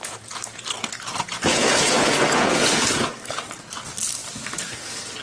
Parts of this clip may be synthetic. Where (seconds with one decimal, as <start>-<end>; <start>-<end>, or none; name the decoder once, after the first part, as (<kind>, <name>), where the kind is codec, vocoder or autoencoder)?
1.1-3.1 (vocoder, Vocos)